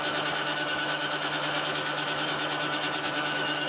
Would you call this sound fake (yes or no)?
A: yes